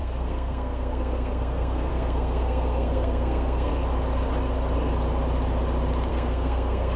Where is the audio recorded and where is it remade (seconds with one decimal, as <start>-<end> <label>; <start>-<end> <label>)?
0.0-3.7 remade; 3.7-6.1 recorded; 6.1-7.0 remade